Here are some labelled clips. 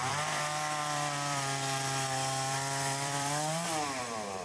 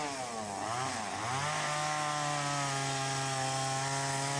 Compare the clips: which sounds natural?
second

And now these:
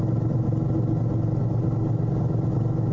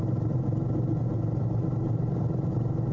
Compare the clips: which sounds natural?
first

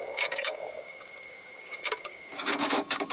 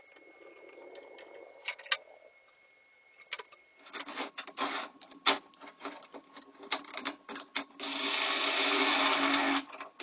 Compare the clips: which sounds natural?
second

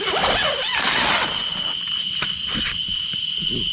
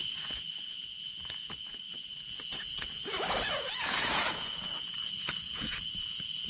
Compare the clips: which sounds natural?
first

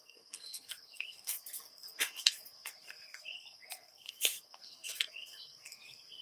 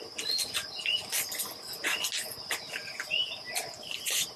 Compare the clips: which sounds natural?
second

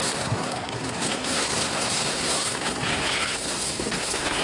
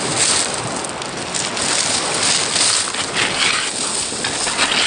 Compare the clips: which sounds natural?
second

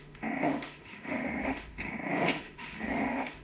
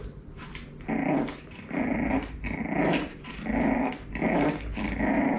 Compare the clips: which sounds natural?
second